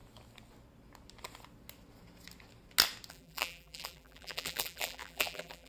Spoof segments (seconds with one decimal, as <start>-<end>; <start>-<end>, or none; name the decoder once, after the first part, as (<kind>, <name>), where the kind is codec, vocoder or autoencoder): 3.1-5.7 (vocoder, BigVGAN v2)